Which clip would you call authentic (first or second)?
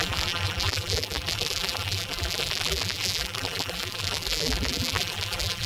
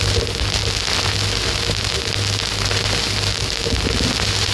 second